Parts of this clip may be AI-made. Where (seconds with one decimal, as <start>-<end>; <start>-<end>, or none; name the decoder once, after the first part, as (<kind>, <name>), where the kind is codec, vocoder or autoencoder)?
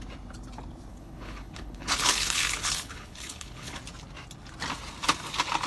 0.9-3.8 (codec, HILCodec)